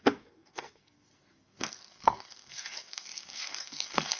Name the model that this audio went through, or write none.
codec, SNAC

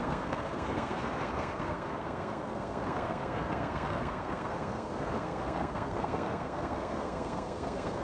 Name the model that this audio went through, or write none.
codec, SNAC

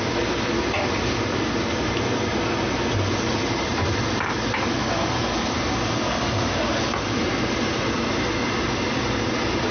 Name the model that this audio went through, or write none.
none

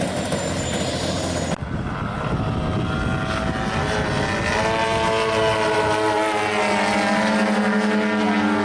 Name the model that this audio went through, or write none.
none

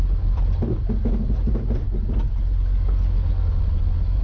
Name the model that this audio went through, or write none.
none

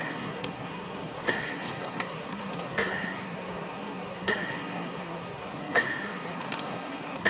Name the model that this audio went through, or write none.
codec, SNAC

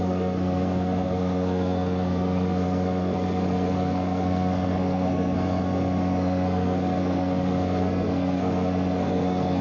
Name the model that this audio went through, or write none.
codec, SNAC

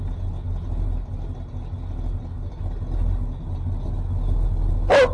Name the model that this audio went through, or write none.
none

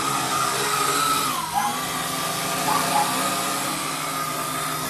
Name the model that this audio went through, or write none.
none